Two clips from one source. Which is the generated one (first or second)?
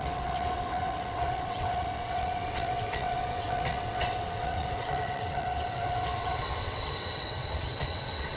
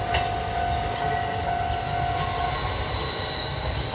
first